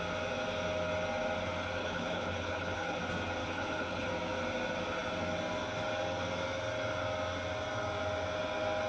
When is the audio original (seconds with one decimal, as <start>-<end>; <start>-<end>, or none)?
0.0-1.8; 3.0-3.4; 4.1-8.9